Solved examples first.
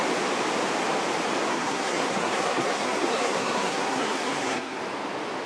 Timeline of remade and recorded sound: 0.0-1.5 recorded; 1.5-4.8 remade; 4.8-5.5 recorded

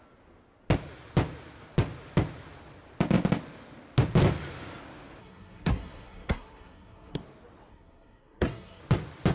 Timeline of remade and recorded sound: 0.0-5.2 recorded; 5.2-7.2 remade; 7.2-7.7 recorded; 7.7-8.8 remade; 8.8-9.3 recorded

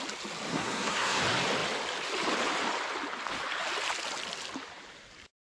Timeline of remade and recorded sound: 0.0-0.5 recorded; 0.5-1.2 remade; 1.2-5.4 recorded

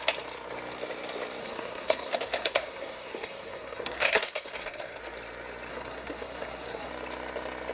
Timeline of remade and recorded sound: 0.0-1.4 recorded; 1.4-5.0 remade; 5.0-5.7 recorded; 5.7-6.9 remade; 6.9-7.7 recorded